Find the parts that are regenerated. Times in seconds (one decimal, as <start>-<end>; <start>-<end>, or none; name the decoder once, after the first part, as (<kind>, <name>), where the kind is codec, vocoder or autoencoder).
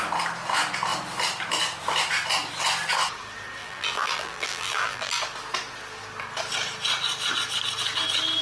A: 3.6-5.2 (vocoder, BigVGAN v2)